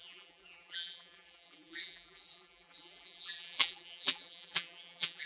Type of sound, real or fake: fake